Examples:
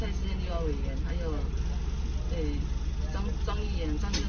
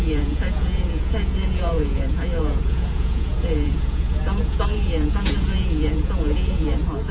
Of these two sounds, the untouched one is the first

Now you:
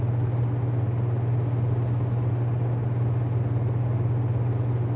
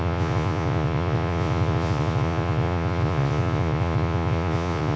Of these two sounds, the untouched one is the first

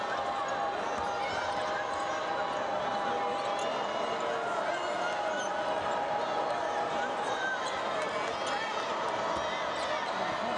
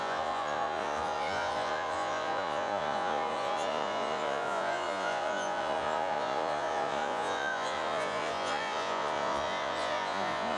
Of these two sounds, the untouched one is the first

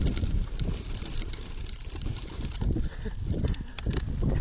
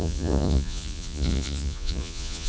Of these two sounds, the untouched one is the first